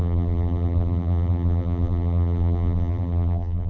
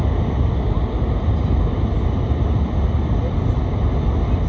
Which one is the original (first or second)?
second